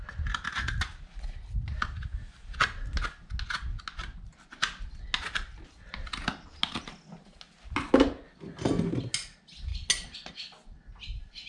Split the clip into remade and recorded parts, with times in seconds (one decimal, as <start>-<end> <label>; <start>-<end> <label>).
0.0-11.5 recorded